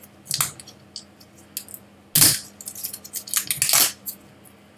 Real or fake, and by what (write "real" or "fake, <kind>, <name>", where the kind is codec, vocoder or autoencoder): real